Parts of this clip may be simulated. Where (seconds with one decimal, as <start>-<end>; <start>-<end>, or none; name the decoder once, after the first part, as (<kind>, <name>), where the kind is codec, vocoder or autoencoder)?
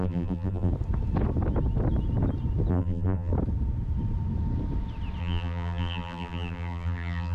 0.0-0.7 (vocoder, BigVGAN v2); 2.7-3.3; 5.2-7.3